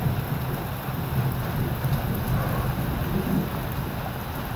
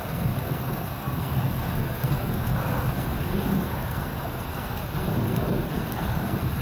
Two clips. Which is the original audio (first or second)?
first